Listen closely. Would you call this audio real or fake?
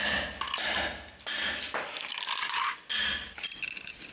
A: real